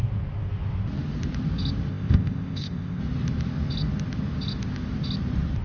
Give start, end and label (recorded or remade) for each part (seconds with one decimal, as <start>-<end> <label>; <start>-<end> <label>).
0.0-1.9 recorded; 1.9-3.0 remade; 3.0-5.6 recorded